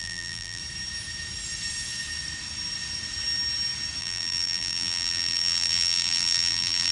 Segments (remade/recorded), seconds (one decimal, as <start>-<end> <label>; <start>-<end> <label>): 0.0-0.6 remade; 0.6-4.0 recorded; 4.0-6.9 remade